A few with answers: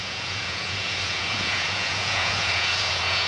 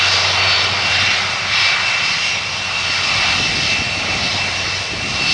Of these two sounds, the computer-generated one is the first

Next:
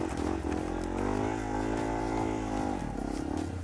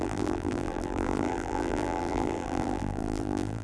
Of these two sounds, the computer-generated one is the second